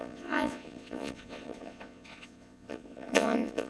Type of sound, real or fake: fake